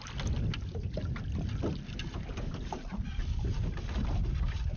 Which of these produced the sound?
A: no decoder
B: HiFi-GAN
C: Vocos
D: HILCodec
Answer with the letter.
A